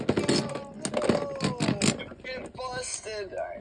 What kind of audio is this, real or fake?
real